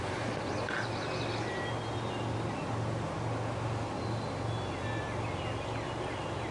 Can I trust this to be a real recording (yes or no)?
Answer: yes